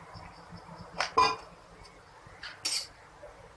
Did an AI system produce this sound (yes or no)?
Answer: no